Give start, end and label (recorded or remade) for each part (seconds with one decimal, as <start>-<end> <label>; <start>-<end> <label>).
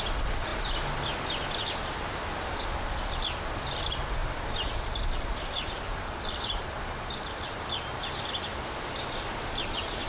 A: 0.0-4.2 recorded; 4.2-8.9 remade; 8.9-10.1 recorded